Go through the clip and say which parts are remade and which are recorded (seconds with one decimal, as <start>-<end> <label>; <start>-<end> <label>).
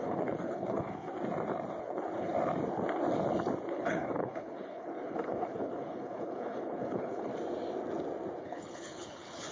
0.0-1.1 remade; 1.1-1.8 recorded; 1.8-2.3 remade; 2.3-3.7 recorded; 3.7-7.3 remade; 7.3-8.4 recorded; 8.4-9.5 remade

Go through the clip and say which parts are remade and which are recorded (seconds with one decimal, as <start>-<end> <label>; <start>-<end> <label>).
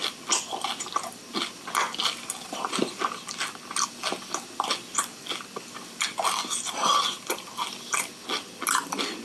0.0-9.2 recorded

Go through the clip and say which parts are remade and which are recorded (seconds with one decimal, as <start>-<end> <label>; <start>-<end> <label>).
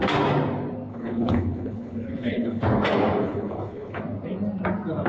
0.0-0.9 recorded; 0.9-2.6 remade; 2.6-3.2 recorded; 3.2-4.0 remade; 4.0-5.1 recorded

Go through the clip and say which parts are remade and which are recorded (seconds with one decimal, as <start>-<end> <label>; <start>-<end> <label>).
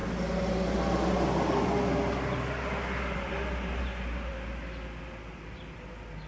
0.0-6.3 recorded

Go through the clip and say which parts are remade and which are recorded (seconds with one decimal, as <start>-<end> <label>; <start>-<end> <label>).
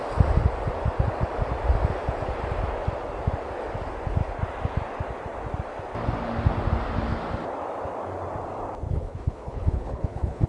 0.0-8.9 recorded; 8.9-10.5 remade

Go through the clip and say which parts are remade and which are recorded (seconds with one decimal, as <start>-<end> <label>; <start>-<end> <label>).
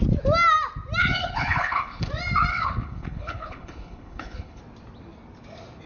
0.0-1.0 recorded; 1.0-2.1 remade; 2.1-2.5 recorded; 2.5-4.6 remade; 4.6-5.9 recorded